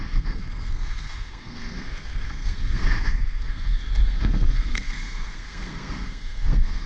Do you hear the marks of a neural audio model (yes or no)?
yes